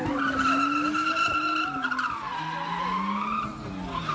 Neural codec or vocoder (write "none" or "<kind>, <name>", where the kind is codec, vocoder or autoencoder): none